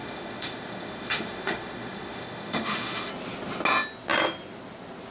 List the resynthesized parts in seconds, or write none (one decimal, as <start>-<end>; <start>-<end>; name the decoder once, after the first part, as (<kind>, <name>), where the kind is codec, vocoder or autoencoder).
0.0-3.1 (autoencoder, DAC-VAE)